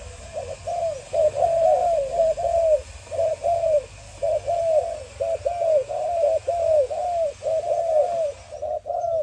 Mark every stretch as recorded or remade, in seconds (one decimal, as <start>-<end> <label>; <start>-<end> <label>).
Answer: 0.0-9.2 recorded